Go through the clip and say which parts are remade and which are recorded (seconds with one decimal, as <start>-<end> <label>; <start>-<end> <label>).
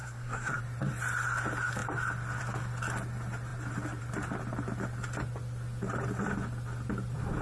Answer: 0.0-0.6 remade; 0.6-7.4 recorded